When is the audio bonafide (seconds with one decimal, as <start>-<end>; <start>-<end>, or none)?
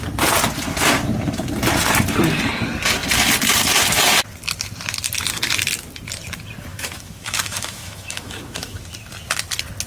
0.0-6.7; 8.8-9.9